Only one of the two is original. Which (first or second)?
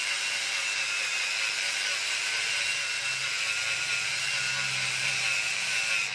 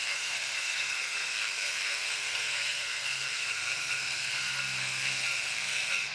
first